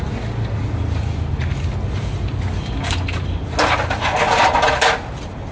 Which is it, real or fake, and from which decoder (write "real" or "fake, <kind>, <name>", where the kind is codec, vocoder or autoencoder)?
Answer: real